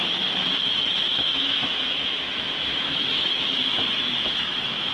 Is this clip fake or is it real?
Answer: fake